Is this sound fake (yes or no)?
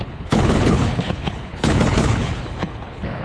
yes